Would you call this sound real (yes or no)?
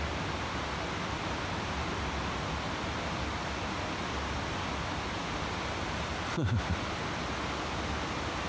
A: yes